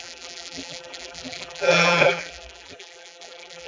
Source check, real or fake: fake